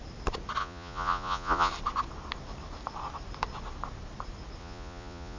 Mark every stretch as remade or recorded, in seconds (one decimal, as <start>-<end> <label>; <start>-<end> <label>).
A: 0.0-0.6 recorded; 0.6-1.7 remade; 1.7-4.6 recorded; 4.6-5.4 remade